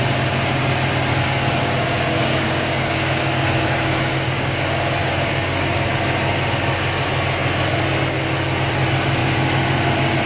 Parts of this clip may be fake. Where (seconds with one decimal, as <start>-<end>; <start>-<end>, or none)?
1.1-4.6; 5.0-5.9

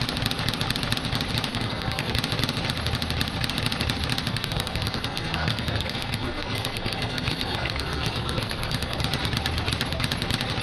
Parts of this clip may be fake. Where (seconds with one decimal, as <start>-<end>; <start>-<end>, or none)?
1.5-2.1; 4.3-9.0

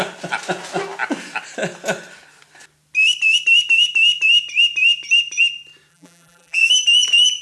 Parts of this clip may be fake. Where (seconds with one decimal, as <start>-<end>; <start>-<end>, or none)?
5.9-6.7

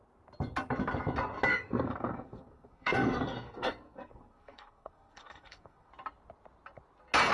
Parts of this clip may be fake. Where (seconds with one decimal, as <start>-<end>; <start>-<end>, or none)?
1.5-5.9

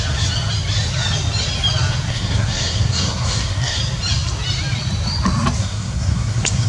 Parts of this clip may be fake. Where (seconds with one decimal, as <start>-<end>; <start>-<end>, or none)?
2.1-3.8; 5.6-6.7

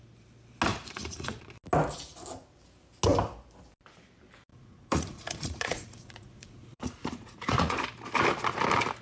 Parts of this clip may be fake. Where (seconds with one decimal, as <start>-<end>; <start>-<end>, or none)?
0.7-1.5; 4.5-7.8

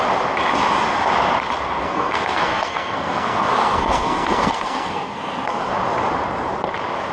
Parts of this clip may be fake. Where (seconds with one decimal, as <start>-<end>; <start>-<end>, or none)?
1.8-5.7